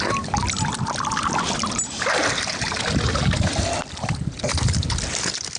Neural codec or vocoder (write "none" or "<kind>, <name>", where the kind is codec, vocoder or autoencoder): none